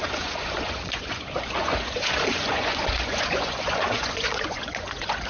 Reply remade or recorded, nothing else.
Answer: remade